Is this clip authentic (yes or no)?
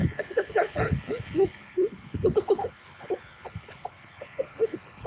no